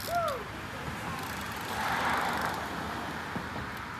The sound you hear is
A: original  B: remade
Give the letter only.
A